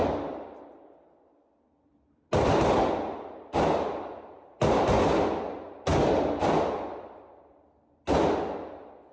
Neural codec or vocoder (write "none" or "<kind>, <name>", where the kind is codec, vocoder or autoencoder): none